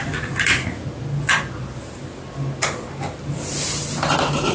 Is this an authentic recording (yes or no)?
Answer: yes